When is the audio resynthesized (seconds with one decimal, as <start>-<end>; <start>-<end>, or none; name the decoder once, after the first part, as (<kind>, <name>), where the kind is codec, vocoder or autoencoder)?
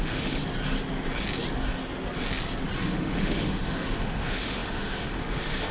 0.0-0.4 (autoencoder, DAC-VAE); 2.8-5.7